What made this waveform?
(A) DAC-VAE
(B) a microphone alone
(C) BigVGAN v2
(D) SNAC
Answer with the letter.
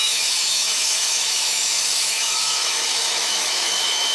A